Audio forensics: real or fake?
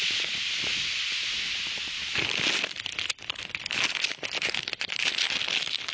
real